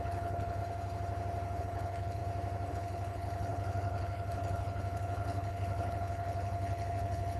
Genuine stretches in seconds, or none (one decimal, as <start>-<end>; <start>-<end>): 0.6-1.6; 2.2-2.7